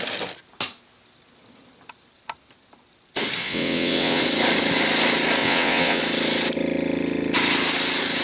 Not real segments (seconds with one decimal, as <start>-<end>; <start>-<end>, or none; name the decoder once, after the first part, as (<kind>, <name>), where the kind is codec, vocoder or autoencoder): 3.4-4.2 (vocoder, WaveNeXt); 5.4-6.0